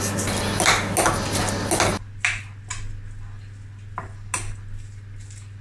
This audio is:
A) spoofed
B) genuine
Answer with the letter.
B